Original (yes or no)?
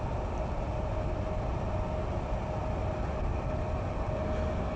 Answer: yes